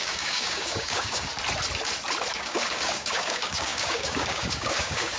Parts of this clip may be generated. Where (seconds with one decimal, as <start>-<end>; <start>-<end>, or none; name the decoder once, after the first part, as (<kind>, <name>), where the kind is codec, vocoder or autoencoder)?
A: 0.0-1.3 (codec, DAC); 2.3-5.2